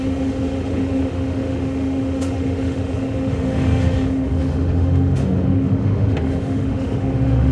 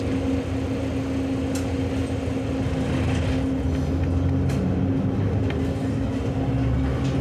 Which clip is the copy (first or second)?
first